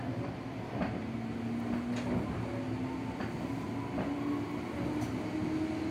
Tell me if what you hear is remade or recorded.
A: recorded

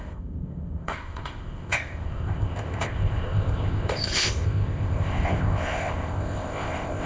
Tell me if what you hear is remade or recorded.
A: remade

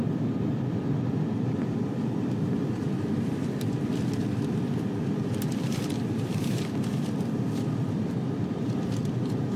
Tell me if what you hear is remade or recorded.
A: remade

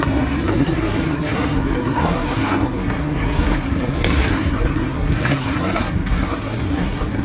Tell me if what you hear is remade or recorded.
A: remade